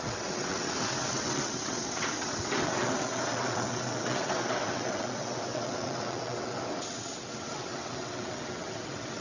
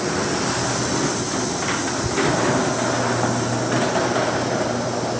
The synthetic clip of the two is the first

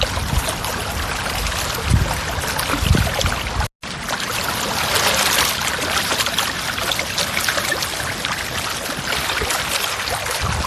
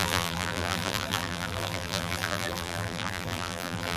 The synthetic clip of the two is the second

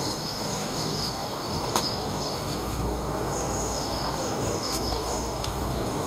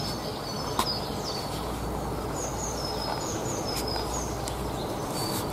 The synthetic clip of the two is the first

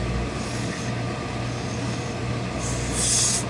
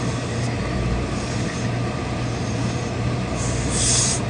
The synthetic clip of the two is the second